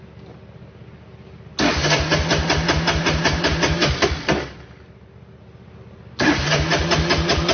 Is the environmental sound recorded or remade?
recorded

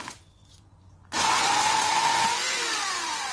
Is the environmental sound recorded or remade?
remade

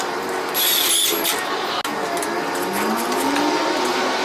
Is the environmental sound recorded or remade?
recorded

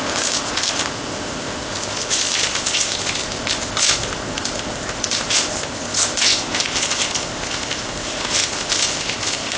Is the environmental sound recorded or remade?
remade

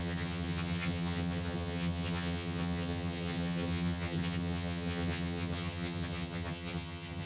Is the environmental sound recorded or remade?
remade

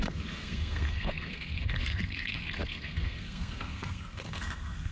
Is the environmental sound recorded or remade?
remade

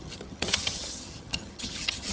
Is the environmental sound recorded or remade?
remade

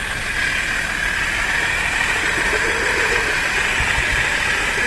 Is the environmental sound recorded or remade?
recorded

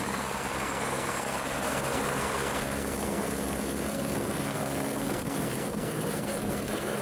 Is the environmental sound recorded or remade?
remade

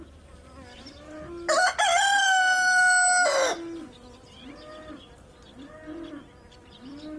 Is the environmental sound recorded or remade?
recorded